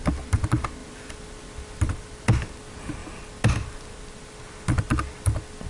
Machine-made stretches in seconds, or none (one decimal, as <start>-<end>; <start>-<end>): none